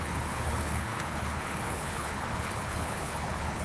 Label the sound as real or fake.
fake